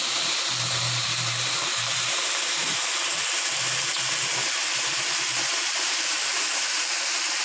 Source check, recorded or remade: remade